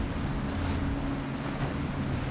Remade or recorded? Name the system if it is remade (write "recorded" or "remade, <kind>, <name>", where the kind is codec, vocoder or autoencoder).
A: recorded